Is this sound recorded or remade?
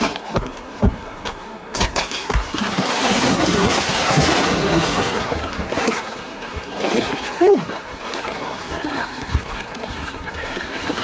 remade